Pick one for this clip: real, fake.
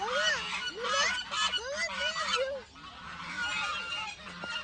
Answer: real